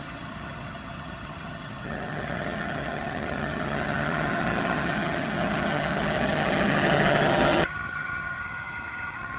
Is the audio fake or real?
fake